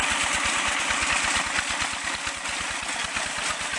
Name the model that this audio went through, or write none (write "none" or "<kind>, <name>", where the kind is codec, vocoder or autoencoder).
none